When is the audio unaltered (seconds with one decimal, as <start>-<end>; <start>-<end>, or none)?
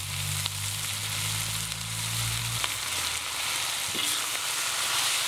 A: 0.0-5.3